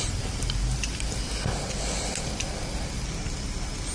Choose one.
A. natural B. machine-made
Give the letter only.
A